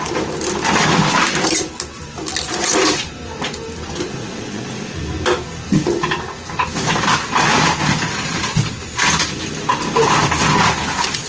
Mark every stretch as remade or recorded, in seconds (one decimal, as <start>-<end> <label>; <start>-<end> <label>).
0.0-4.2 recorded; 4.2-5.0 remade; 5.0-11.3 recorded